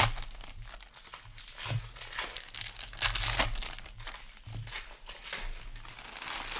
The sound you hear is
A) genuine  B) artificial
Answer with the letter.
A